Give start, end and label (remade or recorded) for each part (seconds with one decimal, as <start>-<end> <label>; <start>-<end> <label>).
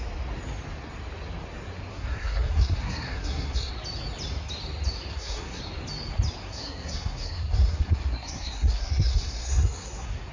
0.0-1.9 recorded; 1.9-3.7 remade; 3.7-5.1 recorded; 5.1-5.6 remade; 5.6-6.4 recorded; 6.4-10.3 remade